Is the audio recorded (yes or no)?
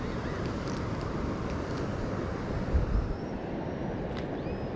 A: no